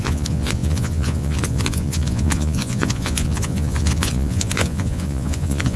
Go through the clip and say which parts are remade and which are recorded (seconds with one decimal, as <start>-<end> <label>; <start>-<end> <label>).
0.0-5.8 remade